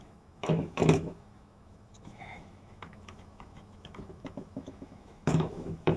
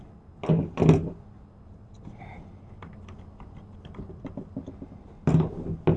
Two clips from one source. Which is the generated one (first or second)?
first